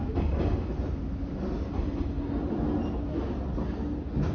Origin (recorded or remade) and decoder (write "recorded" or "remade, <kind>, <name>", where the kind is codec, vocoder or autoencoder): recorded